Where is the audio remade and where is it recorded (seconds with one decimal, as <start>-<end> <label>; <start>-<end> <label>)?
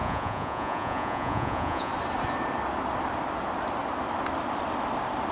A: 0.0-1.9 remade; 1.9-5.3 recorded